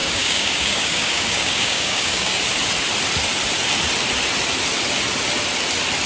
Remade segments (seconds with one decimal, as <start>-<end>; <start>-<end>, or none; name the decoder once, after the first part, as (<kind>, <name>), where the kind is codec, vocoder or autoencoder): 0.0-2.4 (codec, DAC)

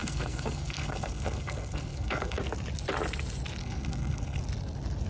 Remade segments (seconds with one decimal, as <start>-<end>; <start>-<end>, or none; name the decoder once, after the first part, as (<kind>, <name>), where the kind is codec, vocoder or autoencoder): 0.0-2.4 (codec, SNAC); 3.6-4.4

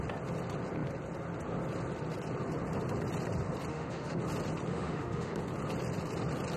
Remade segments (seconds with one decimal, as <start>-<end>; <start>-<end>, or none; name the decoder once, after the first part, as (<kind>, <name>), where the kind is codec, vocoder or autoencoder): 3.7-4.2 (autoencoder, DAC-VAE); 4.7-5.4

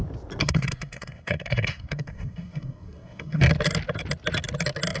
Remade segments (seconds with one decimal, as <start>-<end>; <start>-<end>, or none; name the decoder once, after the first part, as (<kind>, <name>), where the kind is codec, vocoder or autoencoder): 0.4-3.4 (codec, SNAC)

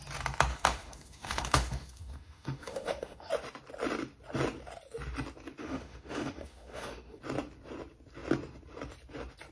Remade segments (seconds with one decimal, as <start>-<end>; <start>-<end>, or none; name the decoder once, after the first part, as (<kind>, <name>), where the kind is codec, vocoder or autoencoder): 0.5-3.3 (autoencoder, DAC-VAE); 5.6-7.2

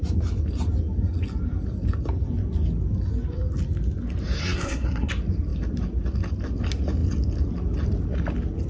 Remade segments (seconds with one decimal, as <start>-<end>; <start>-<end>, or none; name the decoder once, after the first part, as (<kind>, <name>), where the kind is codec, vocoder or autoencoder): 4.4-5.1 (codec, SNAC)

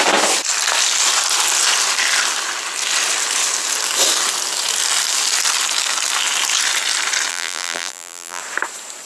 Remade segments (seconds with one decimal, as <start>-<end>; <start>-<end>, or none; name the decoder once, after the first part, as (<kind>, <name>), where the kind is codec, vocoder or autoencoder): 7.3-8.4 (vocoder, BigVGAN v2)

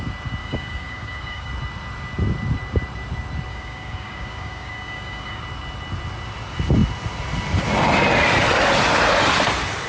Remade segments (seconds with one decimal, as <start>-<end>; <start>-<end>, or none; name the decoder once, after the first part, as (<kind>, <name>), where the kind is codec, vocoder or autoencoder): 0.4-1.5 (codec, DAC); 3.5-5.4